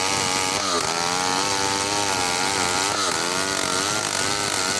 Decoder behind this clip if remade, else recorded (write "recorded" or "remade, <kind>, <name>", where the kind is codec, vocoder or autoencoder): recorded